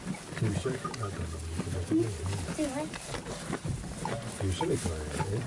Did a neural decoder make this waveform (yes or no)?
no